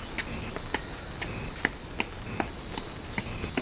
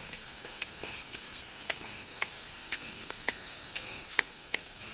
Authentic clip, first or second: first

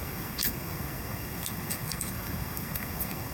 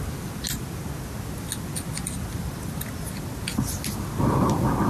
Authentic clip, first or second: second